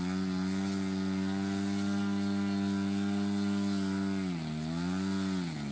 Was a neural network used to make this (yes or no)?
no